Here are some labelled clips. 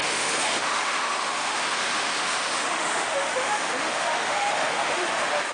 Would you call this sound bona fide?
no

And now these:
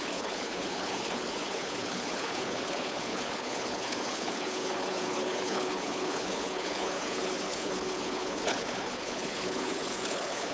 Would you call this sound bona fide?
no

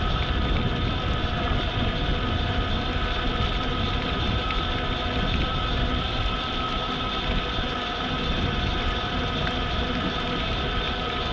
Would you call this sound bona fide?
yes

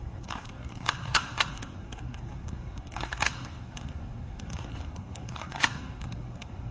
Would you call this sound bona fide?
no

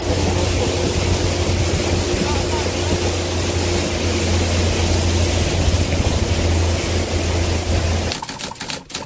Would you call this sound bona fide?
yes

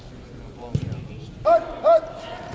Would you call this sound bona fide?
yes